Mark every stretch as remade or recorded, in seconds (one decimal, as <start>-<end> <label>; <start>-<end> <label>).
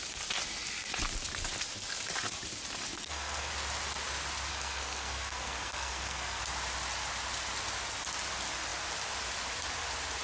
0.0-2.9 recorded; 2.9-3.5 remade; 3.5-4.5 recorded; 4.5-6.4 remade; 6.4-10.2 recorded